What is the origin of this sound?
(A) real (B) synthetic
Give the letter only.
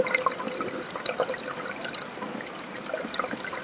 A